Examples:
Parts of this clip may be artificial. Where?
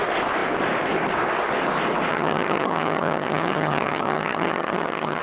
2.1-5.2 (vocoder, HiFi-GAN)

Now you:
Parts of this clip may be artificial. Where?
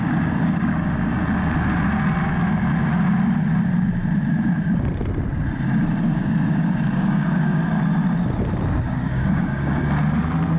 0.0-1.1 (codec, DAC); 6.0-7.6; 8.8-9.8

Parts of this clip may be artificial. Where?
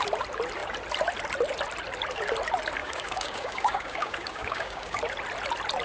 2.8-5.0 (codec, DAC)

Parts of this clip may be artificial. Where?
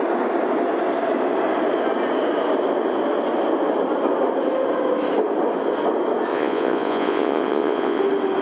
6.3-8.0 (vocoder, Vocos)